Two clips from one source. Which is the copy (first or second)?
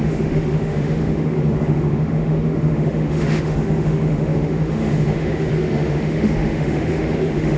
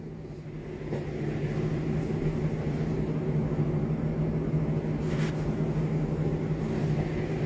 first